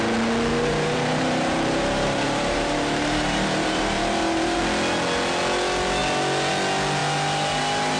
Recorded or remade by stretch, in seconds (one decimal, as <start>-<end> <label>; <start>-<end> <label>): 0.0-0.5 recorded; 0.5-4.6 remade; 4.6-8.0 recorded